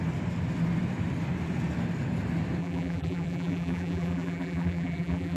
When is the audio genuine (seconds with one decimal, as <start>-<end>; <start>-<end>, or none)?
0.0-2.6